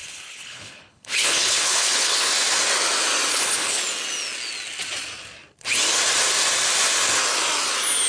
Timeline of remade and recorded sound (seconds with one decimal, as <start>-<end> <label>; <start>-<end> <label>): 0.0-2.3 remade; 2.3-3.3 recorded; 3.3-3.8 remade; 3.8-8.1 recorded